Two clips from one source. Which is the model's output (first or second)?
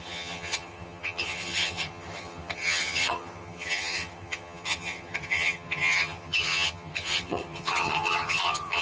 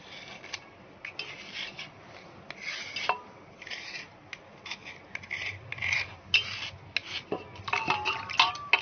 first